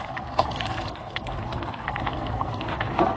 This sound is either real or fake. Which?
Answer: fake